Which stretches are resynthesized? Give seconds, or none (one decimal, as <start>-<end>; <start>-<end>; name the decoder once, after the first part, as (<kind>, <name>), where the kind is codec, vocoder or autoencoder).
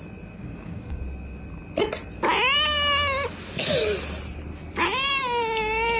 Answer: 0.4-1.0 (codec, DAC)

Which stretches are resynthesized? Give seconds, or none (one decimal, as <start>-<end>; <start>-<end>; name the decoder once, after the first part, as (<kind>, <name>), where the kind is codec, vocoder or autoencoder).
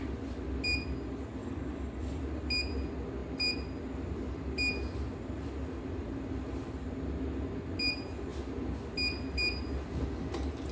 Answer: 1.4-2.2 (codec, DAC)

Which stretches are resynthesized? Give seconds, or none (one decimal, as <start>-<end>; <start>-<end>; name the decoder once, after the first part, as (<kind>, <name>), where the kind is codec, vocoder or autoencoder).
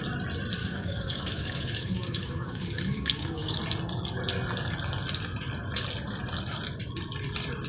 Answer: 0.6-3.6 (codec, DAC)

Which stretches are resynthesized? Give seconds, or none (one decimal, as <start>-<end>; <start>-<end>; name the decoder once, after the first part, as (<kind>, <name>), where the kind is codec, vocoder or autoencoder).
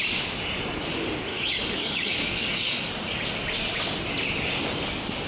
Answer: 1.3-2.9 (codec, DAC)